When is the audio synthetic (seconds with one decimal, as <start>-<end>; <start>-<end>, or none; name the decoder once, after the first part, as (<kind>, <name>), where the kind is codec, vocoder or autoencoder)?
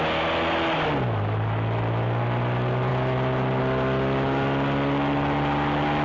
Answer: none